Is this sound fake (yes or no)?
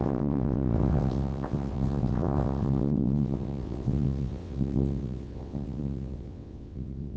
yes